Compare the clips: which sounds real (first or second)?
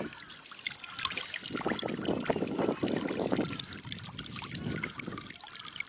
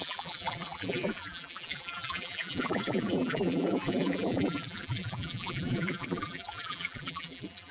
first